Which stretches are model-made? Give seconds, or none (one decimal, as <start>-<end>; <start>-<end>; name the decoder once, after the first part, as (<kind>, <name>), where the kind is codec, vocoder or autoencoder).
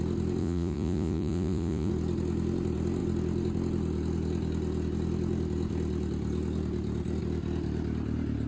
0.4-1.9 (vocoder, Vocos)